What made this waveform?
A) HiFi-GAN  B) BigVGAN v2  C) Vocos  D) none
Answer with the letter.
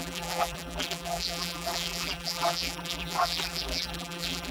B